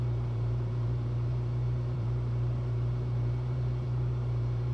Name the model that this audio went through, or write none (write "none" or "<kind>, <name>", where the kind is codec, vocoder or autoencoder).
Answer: vocoder, BigVGAN v2